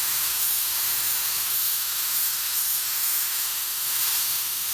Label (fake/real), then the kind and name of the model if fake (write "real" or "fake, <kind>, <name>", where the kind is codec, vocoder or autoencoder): fake, autoencoder, DAC-VAE